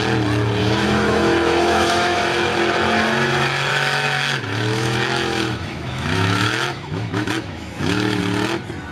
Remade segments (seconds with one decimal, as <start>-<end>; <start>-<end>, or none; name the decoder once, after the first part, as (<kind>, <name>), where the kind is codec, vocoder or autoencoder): 0.6-2.2 (autoencoder, DAC-VAE); 3.7-8.2